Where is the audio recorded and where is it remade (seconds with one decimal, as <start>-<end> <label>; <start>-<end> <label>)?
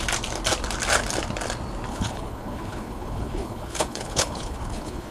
0.0-1.9 recorded; 1.9-5.1 remade